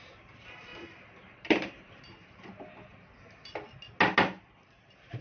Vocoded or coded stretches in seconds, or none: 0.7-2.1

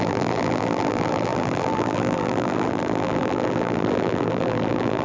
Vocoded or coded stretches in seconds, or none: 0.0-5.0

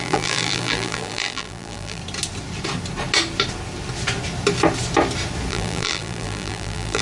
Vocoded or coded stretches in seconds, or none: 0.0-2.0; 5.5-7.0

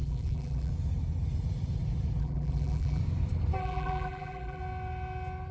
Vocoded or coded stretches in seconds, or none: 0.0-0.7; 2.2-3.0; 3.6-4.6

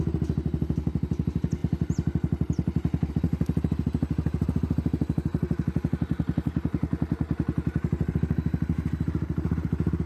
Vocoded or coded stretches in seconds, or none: 1.6-3.1